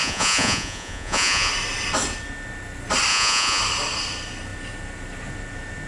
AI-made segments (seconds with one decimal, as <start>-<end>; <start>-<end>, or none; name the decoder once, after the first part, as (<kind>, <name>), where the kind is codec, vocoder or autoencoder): 0.0-1.5 (vocoder, Vocos); 3.1-3.6